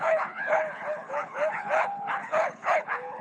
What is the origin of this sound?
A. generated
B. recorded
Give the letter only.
A